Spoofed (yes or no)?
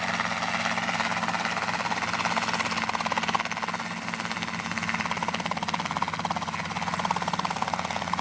no